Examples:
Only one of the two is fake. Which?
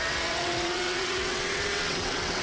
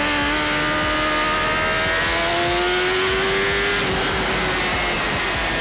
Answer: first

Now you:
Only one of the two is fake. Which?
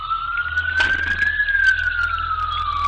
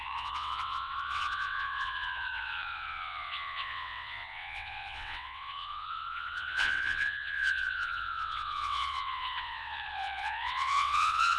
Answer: second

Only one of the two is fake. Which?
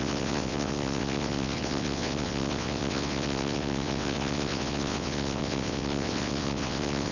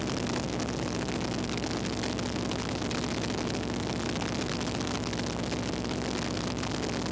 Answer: first